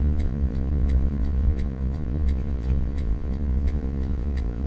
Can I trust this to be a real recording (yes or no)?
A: no